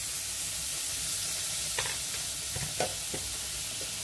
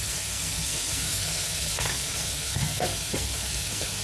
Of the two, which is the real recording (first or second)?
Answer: first